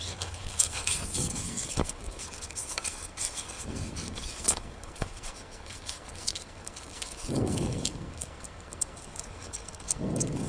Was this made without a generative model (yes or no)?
no